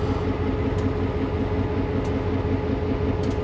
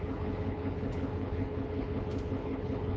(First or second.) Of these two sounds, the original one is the first